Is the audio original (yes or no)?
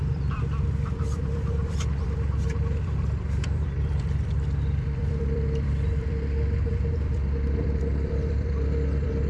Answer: no